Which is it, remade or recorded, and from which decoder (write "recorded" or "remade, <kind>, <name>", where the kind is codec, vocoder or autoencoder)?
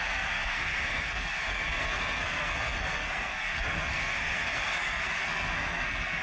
remade, codec, SNAC